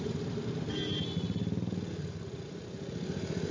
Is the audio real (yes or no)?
yes